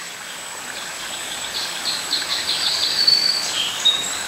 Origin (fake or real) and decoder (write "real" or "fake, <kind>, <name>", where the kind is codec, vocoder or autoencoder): fake, codec, DAC